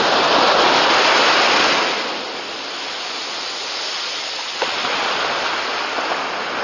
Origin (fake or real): real